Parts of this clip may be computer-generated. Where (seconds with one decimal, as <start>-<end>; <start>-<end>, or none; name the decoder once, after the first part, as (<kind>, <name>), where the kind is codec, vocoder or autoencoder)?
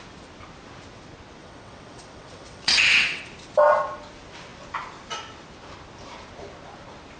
1.4-3.2 (vocoder, WaveNeXt)